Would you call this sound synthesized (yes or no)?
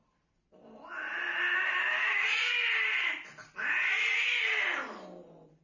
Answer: no